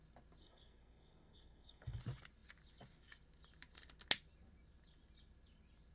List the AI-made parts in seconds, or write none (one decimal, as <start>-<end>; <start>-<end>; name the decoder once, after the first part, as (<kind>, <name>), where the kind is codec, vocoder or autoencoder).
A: 0.4-2.0 (codec, SNAC)